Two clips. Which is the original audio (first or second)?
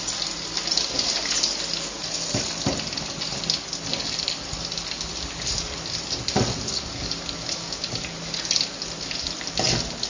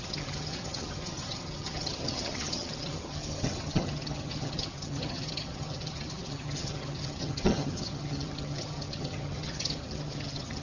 first